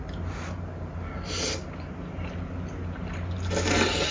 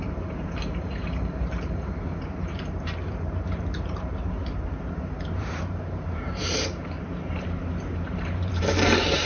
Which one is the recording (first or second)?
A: first